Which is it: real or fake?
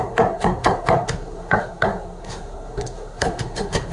fake